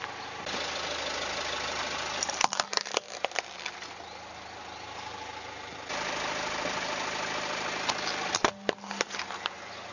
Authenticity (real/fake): real